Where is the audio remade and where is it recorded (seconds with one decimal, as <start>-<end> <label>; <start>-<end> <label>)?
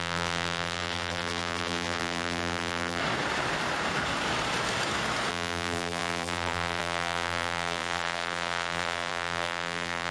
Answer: 0.0-3.0 remade; 3.0-5.3 recorded; 5.3-10.1 remade